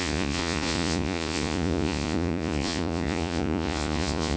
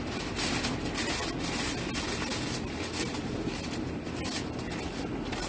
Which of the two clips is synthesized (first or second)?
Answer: first